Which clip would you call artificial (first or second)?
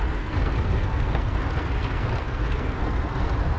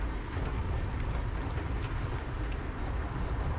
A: first